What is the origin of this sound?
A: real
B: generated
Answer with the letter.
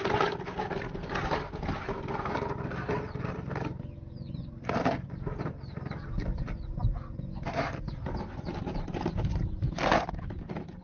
A